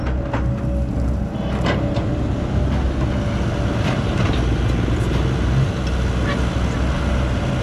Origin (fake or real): real